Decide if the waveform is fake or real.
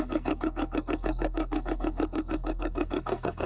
fake